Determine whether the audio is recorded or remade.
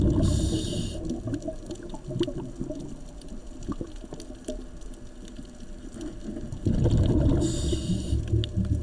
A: recorded